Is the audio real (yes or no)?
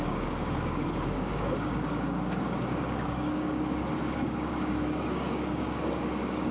no